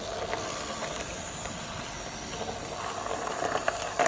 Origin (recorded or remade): recorded